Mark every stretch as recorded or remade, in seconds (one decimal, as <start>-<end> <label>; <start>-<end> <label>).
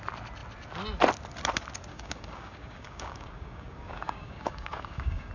0.0-1.9 recorded; 1.9-5.3 remade